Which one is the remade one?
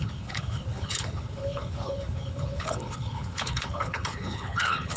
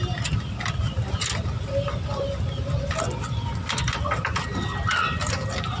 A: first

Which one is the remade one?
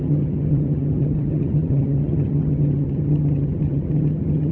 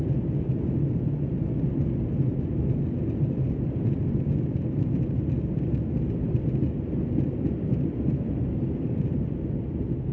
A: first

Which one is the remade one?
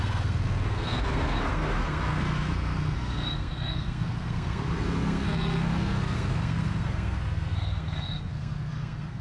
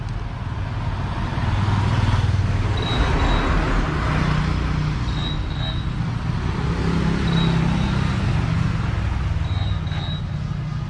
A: first